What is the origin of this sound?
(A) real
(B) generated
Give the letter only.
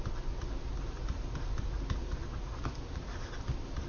A